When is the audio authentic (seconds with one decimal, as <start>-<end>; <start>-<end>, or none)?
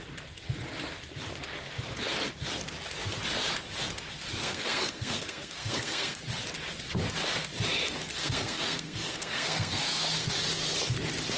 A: 0.0-4.4; 6.2-8.2; 10.3-11.4